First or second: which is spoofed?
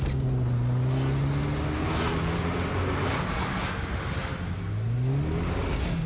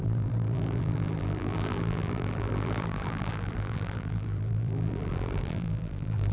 second